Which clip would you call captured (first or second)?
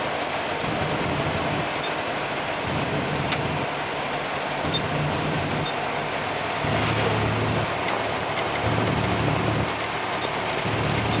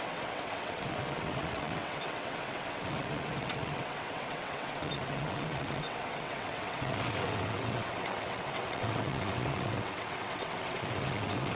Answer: first